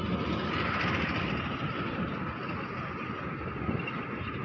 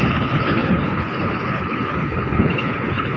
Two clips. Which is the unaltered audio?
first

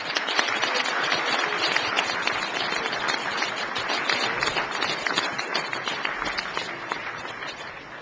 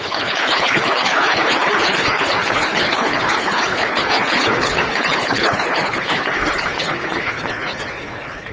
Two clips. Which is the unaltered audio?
first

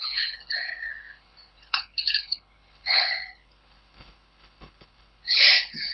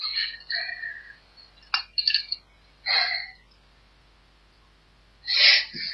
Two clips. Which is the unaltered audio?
second